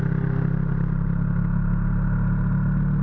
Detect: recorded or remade recorded